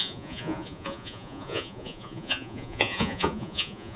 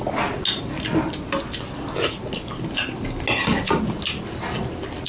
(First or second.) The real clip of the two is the second